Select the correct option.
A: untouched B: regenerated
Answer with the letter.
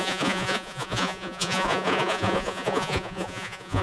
B